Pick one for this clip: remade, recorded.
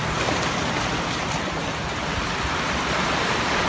remade